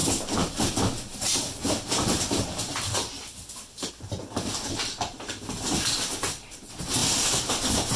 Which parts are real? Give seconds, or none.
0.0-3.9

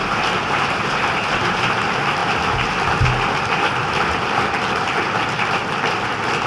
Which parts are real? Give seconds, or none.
1.7-6.5

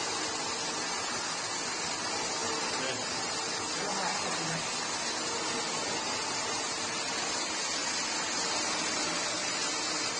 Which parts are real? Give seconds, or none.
0.0-10.2

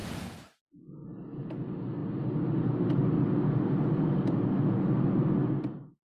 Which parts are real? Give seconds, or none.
0.0-6.1